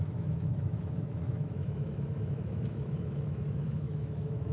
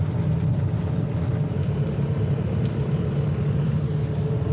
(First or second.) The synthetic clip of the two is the first